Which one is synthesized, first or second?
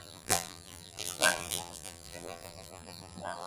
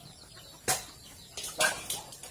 first